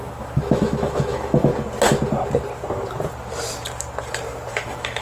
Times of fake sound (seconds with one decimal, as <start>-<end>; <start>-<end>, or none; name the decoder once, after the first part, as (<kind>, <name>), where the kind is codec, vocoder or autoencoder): 0.0-1.5 (autoencoder, DAC-VAE); 4.5-5.0